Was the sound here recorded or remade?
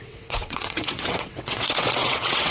remade